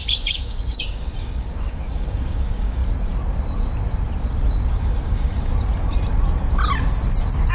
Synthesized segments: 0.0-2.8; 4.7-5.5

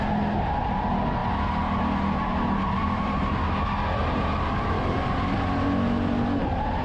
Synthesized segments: 2.8-3.5; 4.0-5.4

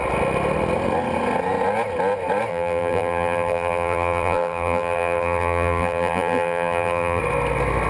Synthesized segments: 2.5-7.2

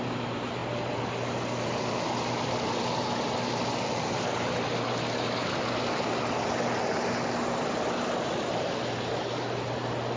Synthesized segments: none

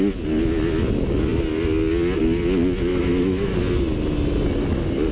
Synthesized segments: 2.9-3.5

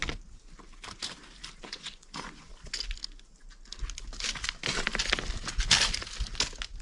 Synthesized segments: 1.6-2.5